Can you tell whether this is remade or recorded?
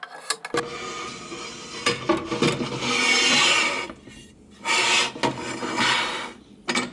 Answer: recorded